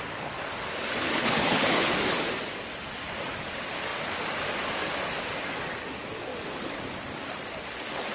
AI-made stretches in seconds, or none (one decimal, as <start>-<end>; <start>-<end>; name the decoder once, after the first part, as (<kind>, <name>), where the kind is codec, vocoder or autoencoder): 1.1-1.9 (codec, HILCodec)